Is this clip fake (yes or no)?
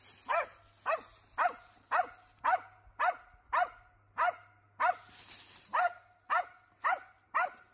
no